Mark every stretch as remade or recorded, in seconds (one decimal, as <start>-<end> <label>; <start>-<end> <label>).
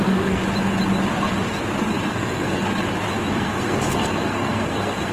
0.0-0.4 remade; 0.4-2.1 recorded; 2.1-2.6 remade; 2.6-3.3 recorded; 3.3-5.1 remade